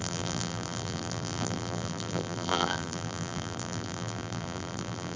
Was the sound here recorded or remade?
remade